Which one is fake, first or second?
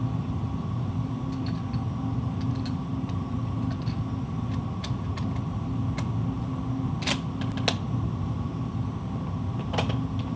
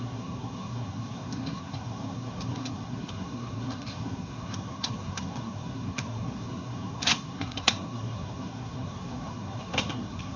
second